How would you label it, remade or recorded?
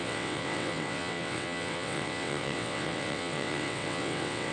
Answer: remade